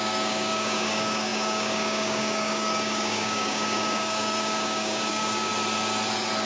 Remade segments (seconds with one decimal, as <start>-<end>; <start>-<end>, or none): 0.0-5.5